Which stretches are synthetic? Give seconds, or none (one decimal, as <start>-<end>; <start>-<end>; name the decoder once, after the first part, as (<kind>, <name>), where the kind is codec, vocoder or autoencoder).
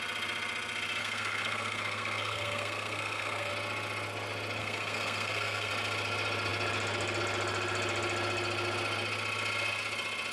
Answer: 1.0-3.5 (codec, SNAC); 4.6-5.7